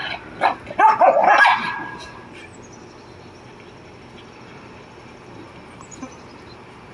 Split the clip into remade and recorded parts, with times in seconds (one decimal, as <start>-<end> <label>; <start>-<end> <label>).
0.0-4.1 recorded; 4.1-6.9 remade